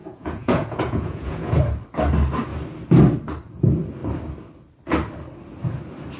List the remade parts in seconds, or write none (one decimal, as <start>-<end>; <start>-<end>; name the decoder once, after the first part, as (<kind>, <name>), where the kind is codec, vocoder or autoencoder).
0.0-1.6 (vocoder, Vocos)